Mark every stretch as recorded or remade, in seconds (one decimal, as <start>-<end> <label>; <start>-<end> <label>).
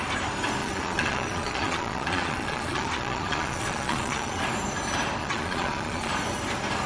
0.0-0.6 recorded; 0.6-4.4 remade; 4.4-5.2 recorded; 5.2-6.1 remade; 6.1-6.9 recorded